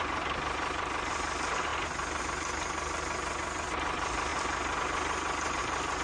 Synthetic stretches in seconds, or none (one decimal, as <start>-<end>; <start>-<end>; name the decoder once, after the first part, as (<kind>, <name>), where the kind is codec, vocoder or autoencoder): 0.0-1.7 (vocoder, BigVGAN v2); 2.2-4.3; 5.6-6.0